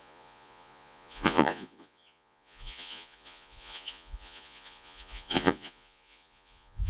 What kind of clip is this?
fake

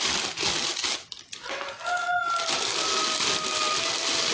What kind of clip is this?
real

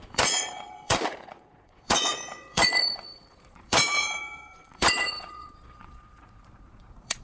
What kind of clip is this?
fake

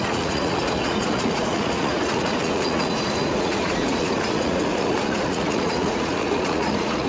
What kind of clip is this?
fake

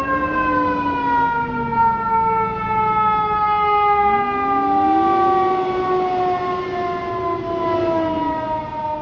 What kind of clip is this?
real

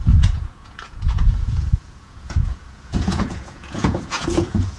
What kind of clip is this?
fake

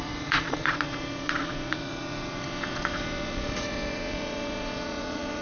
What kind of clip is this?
fake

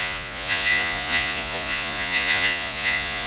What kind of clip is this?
fake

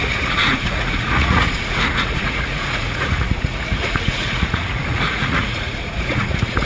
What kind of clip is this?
fake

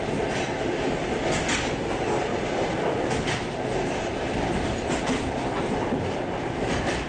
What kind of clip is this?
real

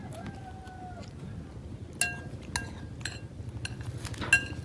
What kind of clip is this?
real